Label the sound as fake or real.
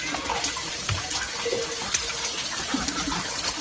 real